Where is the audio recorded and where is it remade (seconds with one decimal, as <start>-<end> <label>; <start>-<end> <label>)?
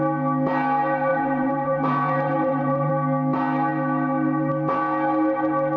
0.0-1.1 recorded; 1.1-2.9 remade; 2.9-5.8 recorded